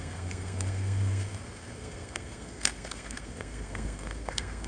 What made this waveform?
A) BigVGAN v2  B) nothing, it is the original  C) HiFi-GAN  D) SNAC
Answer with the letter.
D